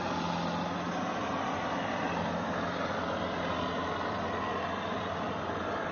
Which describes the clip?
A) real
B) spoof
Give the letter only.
A